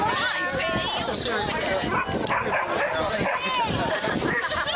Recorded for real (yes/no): yes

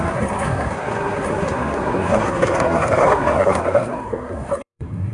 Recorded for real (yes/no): no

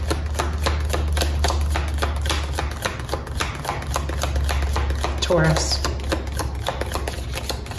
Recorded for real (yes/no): yes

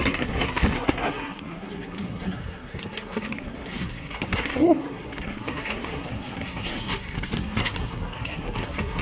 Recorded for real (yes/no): no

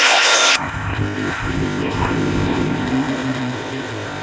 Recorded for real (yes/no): no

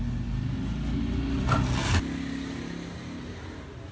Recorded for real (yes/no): yes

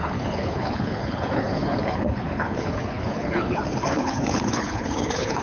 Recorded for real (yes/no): no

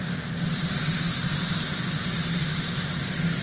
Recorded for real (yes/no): yes